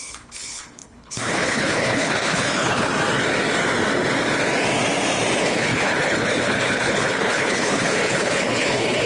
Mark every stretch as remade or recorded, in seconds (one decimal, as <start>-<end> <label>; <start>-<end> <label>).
0.0-2.9 remade; 2.9-5.4 recorded; 5.4-9.1 remade